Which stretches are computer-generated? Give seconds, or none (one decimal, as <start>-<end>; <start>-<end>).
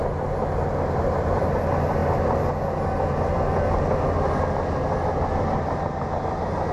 none